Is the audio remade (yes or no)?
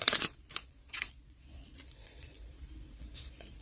yes